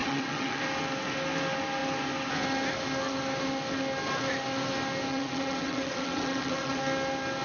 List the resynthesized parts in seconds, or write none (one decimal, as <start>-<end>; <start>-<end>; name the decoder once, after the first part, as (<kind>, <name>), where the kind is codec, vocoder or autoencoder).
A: 0.0-0.6 (vocoder, WaveNeXt); 5.1-6.8